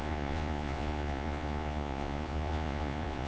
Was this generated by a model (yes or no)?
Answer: yes